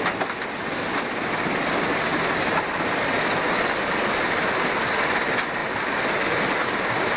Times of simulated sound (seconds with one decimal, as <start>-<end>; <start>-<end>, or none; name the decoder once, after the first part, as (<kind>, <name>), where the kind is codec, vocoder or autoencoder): none